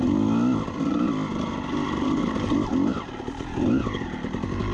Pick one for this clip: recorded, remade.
recorded